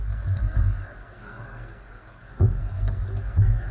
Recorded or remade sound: remade